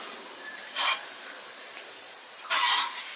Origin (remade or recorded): remade